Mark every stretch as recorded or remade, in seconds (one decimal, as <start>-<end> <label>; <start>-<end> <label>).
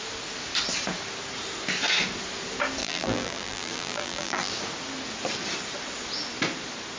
0.0-2.8 recorded; 2.8-4.5 remade; 4.5-7.0 recorded